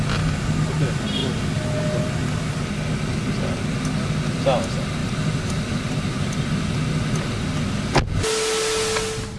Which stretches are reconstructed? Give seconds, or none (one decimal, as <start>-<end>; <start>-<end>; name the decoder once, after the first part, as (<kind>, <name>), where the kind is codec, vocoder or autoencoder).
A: none